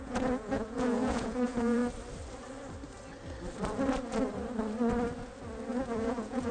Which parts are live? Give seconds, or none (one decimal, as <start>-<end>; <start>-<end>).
1.8-5.7